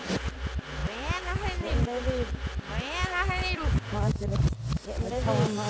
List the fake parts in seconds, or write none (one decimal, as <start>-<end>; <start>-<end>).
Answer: none